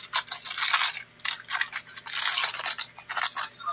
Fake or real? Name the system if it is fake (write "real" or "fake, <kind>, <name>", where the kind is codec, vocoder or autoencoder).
real